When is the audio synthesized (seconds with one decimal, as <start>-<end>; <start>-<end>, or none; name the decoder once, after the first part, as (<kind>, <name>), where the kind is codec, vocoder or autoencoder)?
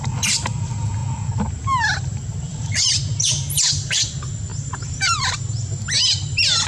2.5-4.1 (vocoder, BigVGAN v2); 4.5-5.4